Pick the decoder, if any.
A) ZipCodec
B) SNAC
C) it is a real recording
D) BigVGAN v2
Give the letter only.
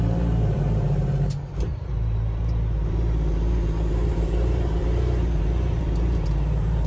D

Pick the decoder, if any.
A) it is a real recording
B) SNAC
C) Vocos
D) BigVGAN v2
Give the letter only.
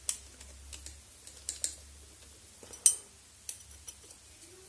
A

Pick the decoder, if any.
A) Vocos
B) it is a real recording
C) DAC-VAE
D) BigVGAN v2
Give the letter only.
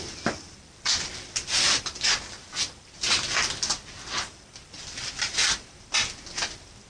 B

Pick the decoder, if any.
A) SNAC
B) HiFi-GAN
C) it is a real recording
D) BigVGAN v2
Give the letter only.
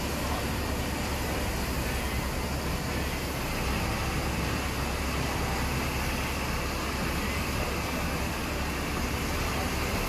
C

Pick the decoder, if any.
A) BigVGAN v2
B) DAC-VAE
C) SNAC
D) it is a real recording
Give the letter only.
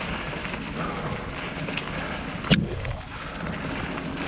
D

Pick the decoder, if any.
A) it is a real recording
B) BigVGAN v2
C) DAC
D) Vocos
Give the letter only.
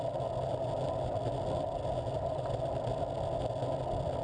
A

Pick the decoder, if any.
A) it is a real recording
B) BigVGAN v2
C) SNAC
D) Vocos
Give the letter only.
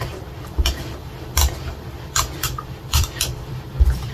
B